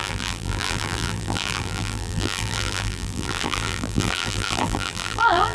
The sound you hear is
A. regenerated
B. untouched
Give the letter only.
A